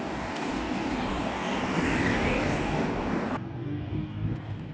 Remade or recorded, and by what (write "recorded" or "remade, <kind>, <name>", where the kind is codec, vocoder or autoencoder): remade, codec, DAC